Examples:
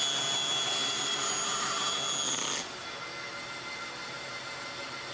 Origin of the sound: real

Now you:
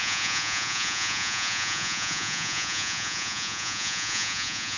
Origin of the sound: fake